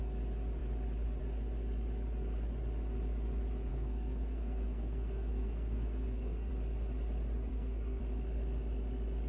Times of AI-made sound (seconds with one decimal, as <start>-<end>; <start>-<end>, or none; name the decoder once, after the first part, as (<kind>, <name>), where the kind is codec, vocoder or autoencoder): 3.7-6.5 (codec, SNAC); 7.5-8.0